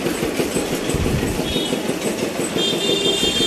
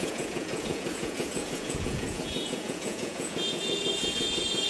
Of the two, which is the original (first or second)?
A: first